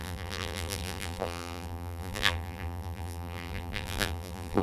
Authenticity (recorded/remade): remade